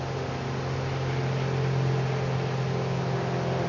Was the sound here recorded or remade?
recorded